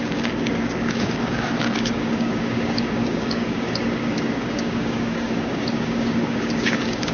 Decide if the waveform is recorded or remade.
remade